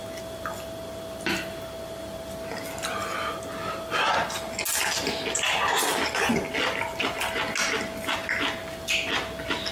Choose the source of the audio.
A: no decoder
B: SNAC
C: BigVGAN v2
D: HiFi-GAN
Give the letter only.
A